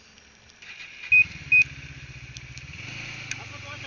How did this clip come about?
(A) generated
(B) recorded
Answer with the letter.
B